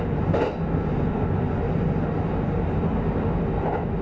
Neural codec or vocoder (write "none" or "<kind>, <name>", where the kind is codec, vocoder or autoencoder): none